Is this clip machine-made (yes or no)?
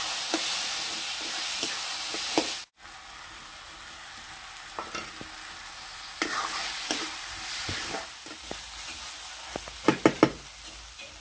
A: no